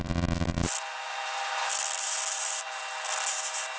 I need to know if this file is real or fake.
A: real